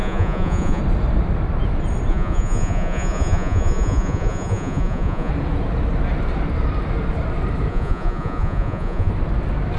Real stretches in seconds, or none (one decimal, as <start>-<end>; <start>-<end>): 0.8-2.1; 5.3-7.7; 9.1-9.8